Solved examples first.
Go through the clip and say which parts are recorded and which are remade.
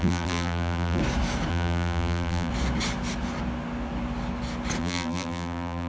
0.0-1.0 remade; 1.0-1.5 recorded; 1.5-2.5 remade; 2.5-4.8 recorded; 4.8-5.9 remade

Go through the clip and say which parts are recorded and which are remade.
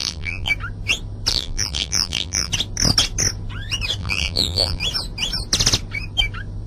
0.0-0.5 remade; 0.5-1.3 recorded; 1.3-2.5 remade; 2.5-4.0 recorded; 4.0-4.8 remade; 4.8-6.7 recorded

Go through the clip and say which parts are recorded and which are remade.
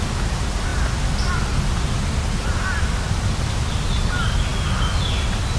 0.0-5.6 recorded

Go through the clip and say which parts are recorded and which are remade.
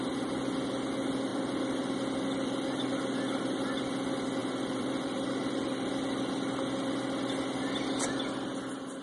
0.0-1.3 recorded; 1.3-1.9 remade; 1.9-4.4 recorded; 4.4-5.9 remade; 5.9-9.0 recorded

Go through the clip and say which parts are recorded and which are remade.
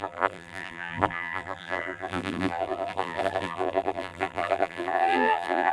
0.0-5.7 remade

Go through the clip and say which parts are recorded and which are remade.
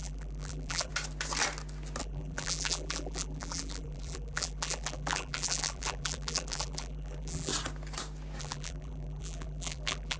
0.0-0.9 remade; 0.9-2.0 recorded; 2.0-7.5 remade; 7.5-8.4 recorded; 8.4-10.2 remade